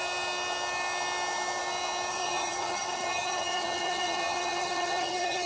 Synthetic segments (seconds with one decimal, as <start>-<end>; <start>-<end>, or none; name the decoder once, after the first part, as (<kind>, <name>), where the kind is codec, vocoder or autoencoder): 2.1-5.5 (vocoder, HiFi-GAN)